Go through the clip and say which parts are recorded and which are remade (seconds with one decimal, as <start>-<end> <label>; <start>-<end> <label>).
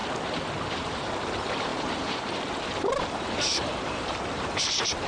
0.0-0.7 recorded; 0.7-5.1 remade